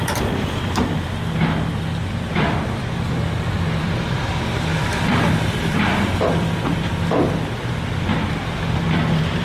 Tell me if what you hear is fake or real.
fake